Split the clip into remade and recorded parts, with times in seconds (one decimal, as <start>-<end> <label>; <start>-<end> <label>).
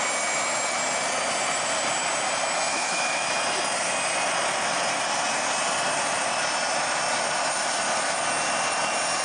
0.0-2.7 recorded; 2.7-3.3 remade; 3.3-9.2 recorded